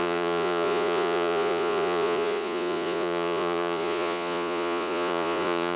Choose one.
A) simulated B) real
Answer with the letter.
A